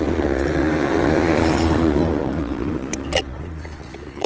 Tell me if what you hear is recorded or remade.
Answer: remade